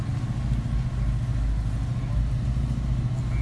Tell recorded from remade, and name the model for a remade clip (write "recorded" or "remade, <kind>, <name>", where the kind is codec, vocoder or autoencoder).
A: recorded